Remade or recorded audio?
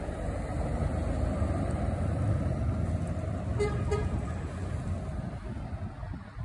recorded